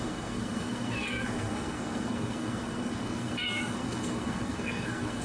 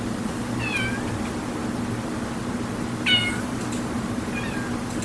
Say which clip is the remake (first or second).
first